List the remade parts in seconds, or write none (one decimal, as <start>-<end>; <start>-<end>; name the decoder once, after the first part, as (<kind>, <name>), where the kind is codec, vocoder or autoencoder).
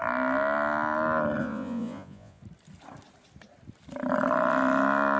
1.4-2.4 (vocoder, Vocos)